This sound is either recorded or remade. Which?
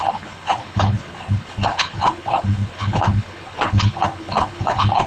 remade